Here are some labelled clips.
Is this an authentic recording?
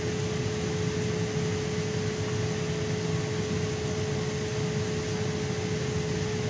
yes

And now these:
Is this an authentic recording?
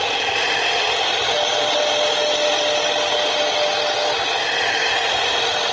yes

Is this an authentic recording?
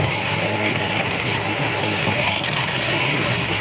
no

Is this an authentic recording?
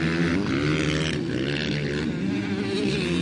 yes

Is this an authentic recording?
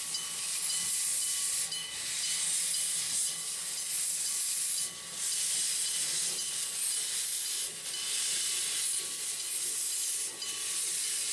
yes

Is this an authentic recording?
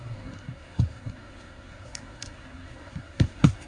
no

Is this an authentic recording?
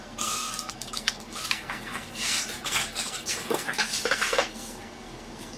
no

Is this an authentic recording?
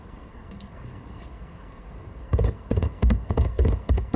no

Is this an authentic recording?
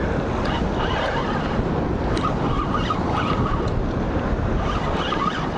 yes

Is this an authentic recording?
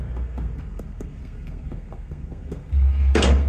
no